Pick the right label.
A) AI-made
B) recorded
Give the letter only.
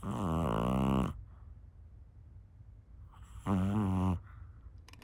B